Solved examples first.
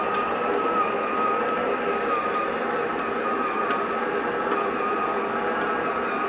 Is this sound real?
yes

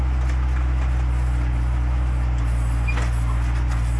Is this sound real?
yes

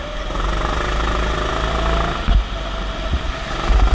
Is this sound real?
yes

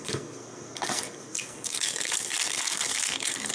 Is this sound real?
no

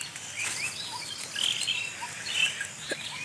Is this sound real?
yes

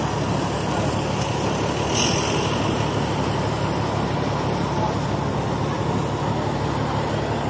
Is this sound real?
yes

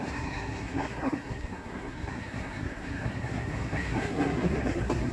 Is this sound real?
no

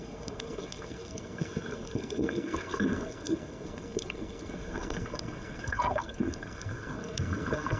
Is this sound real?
no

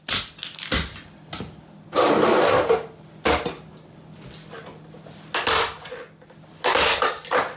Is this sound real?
yes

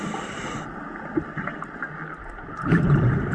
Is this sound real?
yes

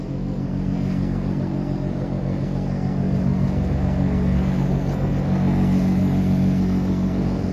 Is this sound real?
no